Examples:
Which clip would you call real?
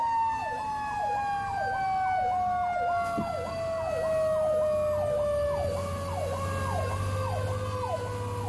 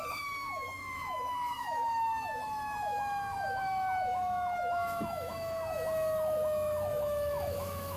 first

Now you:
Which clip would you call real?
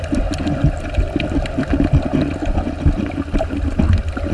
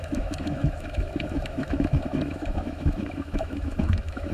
first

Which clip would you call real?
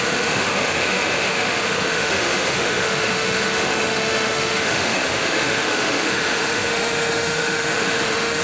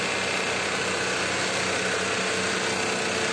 second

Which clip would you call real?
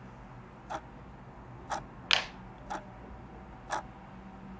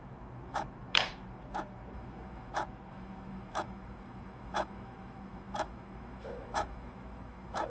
first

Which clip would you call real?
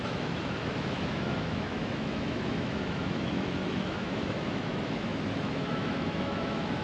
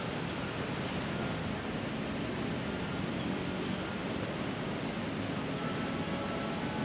second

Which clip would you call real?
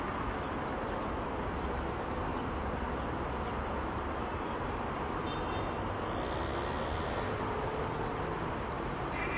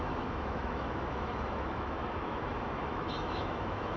first